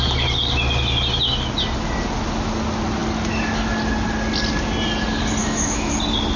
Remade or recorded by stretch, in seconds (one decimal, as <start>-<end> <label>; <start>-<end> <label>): 0.0-5.4 recorded; 5.4-5.9 remade; 5.9-6.4 recorded